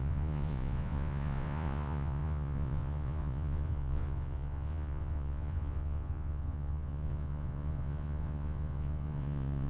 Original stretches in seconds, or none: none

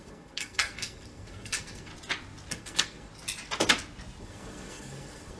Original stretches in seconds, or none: 1.9-2.5; 3.1-4.2

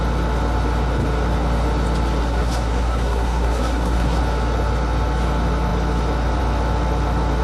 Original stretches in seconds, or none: 0.0-2.2; 4.2-7.4

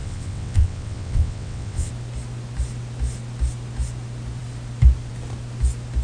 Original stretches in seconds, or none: 1.9-6.0

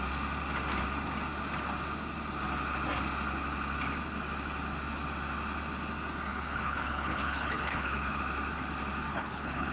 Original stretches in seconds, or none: 0.0-6.3; 8.2-9.1

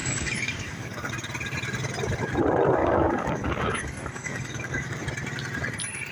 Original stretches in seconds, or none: 1.1-2.8; 5.0-6.1

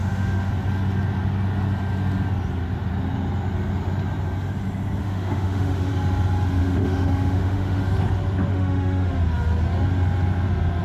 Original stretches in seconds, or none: 0.5-5.0; 5.9-6.6; 7.8-8.5; 9.1-10.8